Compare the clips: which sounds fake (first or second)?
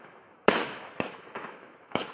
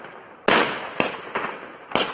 first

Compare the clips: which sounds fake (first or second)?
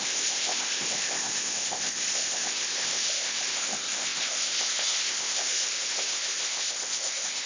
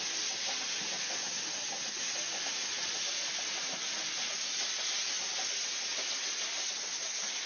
first